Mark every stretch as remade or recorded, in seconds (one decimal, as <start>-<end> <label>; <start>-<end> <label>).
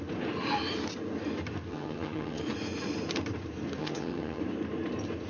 0.0-1.7 recorded; 1.7-2.4 remade; 2.4-3.8 recorded; 3.8-4.4 remade; 4.4-5.3 recorded